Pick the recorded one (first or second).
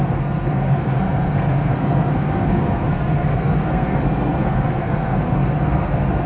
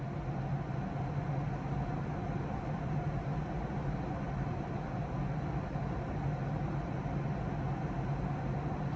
second